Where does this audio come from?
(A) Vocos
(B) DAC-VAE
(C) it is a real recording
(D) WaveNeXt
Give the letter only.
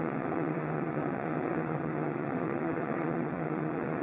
D